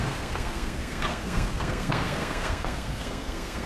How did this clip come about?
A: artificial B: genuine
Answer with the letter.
A